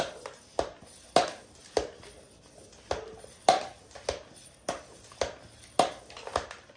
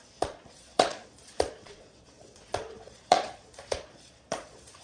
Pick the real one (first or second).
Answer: first